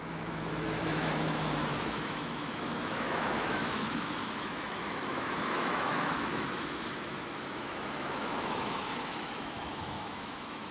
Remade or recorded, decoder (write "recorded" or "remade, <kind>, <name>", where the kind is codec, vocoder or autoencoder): remade, autoencoder, DAC-VAE